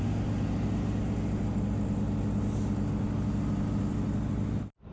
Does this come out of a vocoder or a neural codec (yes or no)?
no